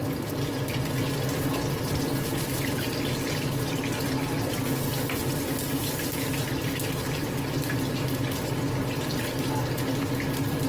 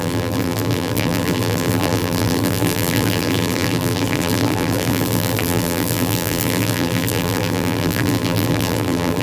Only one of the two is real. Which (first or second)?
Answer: first